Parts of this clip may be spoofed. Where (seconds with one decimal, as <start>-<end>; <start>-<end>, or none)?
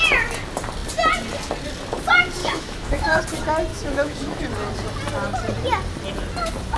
2.4-3.2; 3.7-4.4